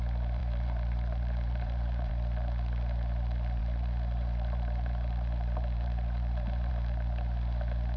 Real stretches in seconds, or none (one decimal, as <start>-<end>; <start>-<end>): 0.0-0.4; 2.1-3.6; 6.7-8.0